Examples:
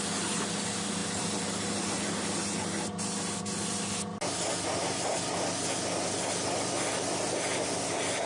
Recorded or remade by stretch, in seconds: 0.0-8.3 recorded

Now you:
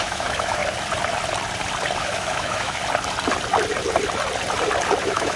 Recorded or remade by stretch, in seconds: 0.0-0.6 remade; 0.6-2.0 recorded; 2.0-2.8 remade; 2.8-5.0 recorded; 5.0-5.4 remade

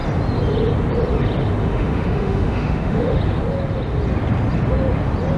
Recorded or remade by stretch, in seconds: 0.0-1.6 recorded; 1.6-3.2 remade; 3.2-5.4 recorded

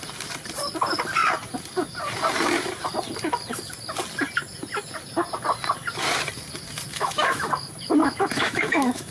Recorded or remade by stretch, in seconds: 0.0-6.9 recorded; 6.9-7.5 remade; 7.5-8.0 recorded; 8.0-9.1 remade

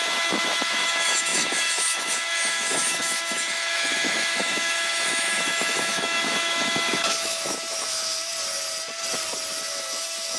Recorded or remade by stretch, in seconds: 0.0-8.3 remade; 8.3-9.7 recorded; 9.7-10.4 remade

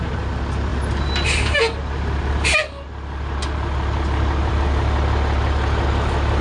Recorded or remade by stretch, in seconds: 0.0-6.4 recorded

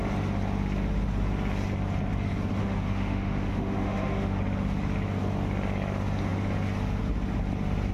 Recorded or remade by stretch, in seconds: 0.0-2.6 recorded; 2.6-4.4 remade; 4.4-7.9 recorded

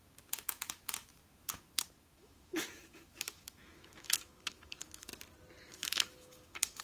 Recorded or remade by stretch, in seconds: 0.0-5.1 remade; 5.1-5.7 recorded; 5.7-6.8 remade